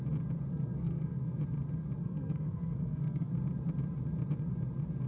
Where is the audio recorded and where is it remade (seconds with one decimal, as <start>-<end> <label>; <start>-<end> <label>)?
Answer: 0.0-0.5 recorded; 0.5-1.4 remade; 1.4-2.0 recorded; 2.0-3.3 remade; 3.3-5.1 recorded